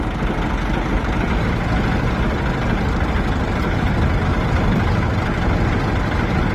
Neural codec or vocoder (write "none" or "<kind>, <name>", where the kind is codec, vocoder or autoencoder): none